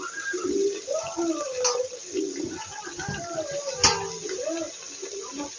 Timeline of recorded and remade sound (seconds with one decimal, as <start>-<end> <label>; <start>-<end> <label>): 0.0-5.6 recorded